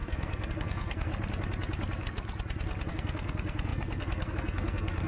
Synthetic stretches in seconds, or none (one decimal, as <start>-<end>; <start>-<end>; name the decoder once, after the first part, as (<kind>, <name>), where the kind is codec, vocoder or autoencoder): 0.0-1.1 (codec, SNAC); 2.9-5.1